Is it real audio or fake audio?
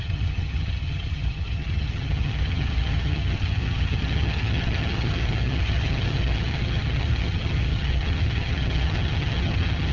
fake